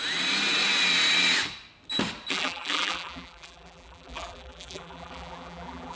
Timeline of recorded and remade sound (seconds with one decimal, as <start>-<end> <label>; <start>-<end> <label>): 0.0-2.3 recorded; 2.3-6.0 remade